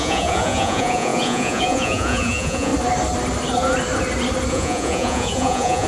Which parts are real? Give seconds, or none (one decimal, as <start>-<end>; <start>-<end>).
2.7-4.5